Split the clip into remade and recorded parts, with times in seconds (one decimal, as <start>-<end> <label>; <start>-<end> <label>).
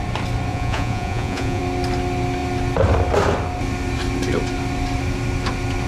0.0-0.5 recorded; 0.5-1.6 remade; 1.6-5.9 recorded